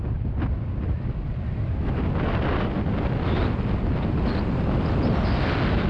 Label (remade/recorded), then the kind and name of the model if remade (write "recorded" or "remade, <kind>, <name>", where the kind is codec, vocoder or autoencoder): recorded